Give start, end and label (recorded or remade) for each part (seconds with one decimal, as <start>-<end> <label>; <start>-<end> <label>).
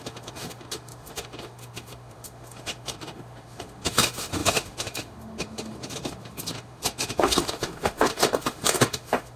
0.0-9.4 remade